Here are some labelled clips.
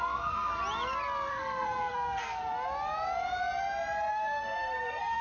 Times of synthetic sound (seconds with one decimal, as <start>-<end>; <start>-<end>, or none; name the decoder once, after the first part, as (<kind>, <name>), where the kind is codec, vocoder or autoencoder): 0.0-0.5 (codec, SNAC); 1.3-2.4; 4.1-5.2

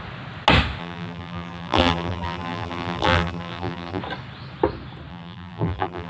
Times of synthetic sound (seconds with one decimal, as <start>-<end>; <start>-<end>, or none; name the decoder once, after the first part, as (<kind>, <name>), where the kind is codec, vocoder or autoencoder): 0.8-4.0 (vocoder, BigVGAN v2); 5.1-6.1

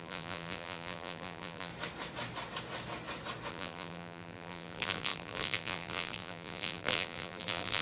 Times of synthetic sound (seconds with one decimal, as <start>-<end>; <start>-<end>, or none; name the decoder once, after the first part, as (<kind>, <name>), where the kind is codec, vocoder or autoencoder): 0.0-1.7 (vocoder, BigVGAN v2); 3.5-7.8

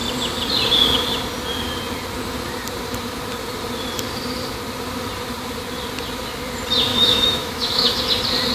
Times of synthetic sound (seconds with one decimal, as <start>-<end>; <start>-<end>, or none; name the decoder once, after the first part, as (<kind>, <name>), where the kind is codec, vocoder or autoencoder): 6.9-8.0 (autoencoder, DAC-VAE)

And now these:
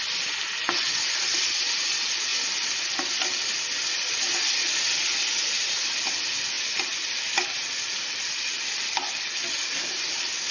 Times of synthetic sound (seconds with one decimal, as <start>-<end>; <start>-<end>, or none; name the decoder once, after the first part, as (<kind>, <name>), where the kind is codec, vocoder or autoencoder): none

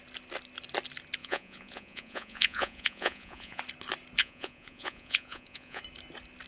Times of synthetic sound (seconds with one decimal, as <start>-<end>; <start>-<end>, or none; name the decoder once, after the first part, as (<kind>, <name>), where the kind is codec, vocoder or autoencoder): 1.2-3.6 (vocoder, Vocos); 4.2-5.8

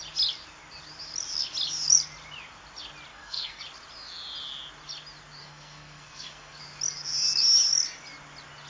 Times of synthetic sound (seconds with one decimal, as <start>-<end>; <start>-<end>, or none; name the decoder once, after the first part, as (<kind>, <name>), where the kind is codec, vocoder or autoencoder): 3.1-3.6 (codec, SNAC); 5.4-6.6

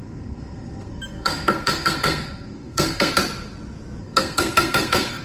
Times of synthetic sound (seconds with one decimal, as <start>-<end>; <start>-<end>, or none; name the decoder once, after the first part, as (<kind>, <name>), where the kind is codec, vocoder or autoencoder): 0.0-3.1 (codec, SNAC); 4.0-5.2